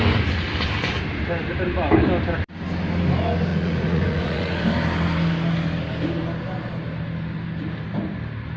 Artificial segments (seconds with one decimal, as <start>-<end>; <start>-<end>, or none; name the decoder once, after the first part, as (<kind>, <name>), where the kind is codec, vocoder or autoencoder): 3.5-4.6 (vocoder, Vocos)